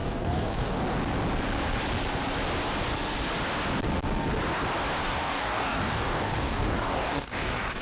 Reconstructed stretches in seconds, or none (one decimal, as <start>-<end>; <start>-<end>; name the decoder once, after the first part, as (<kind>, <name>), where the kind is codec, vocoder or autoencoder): 0.0-0.8 (codec, DAC); 5.0-7.8